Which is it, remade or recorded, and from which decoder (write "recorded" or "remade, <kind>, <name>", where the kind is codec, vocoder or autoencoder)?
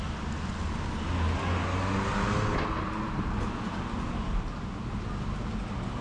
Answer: recorded